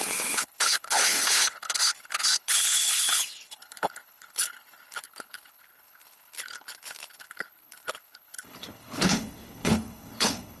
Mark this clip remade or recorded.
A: remade